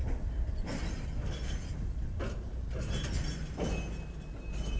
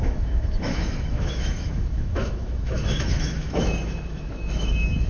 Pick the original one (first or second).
first